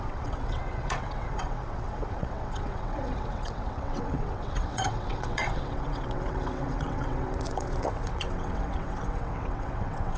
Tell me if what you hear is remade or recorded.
remade